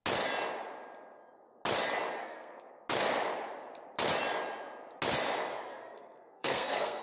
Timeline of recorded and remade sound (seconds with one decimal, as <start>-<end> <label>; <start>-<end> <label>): 0.0-2.2 recorded; 2.2-2.7 remade; 2.7-5.5 recorded; 5.5-7.0 remade

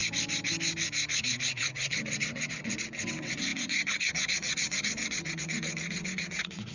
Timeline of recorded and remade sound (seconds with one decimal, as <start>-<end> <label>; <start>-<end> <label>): 0.0-1.2 recorded; 1.2-6.7 remade

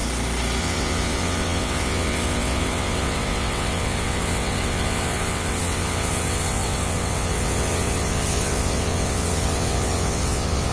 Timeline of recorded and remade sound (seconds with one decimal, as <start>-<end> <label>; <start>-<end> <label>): 0.0-0.6 recorded; 0.6-10.7 remade

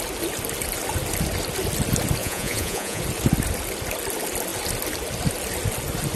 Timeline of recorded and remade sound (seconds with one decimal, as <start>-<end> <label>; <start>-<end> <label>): 0.0-2.2 recorded; 2.2-3.0 remade; 3.0-6.2 recorded

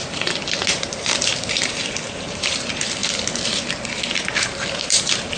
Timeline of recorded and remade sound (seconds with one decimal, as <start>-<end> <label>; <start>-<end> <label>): 0.0-0.9 recorded; 0.9-3.0 remade; 3.0-4.8 recorded; 4.8-5.4 remade

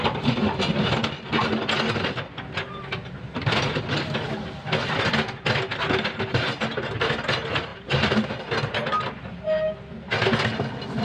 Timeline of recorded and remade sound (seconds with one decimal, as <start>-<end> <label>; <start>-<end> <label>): 0.0-11.0 recorded

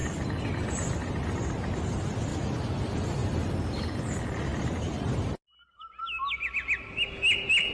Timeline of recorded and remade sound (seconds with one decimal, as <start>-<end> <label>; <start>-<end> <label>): 0.0-3.2 recorded; 3.2-3.8 remade; 3.8-7.7 recorded

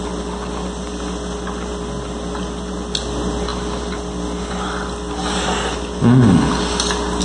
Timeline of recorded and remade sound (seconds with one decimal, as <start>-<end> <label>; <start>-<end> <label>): 0.0-7.2 recorded